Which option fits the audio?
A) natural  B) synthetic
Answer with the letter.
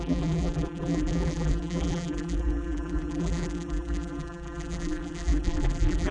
B